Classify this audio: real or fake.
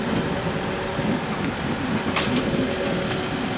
real